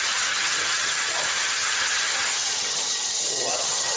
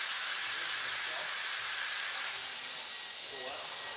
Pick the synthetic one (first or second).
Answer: first